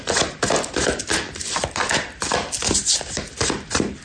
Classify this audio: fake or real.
real